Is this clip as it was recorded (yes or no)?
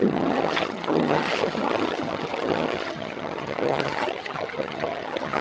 no